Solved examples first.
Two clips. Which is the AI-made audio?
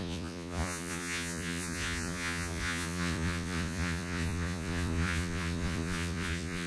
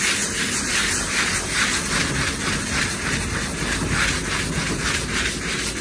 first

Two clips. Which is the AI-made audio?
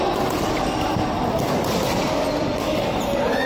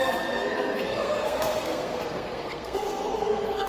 second